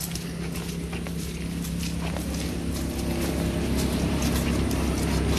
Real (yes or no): yes